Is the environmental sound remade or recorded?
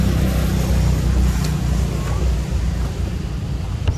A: recorded